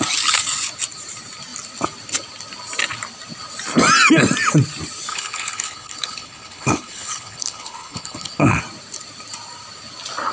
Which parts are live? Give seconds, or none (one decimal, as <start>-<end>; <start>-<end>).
0.0-5.1; 8.6-10.3